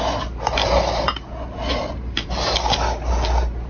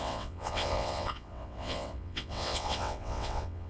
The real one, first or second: first